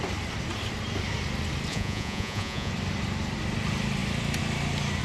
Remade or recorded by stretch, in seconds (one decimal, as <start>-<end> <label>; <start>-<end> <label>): 0.0-1.7 recorded; 1.7-2.7 remade; 2.7-5.0 recorded